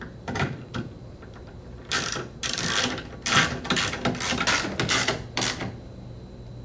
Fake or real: fake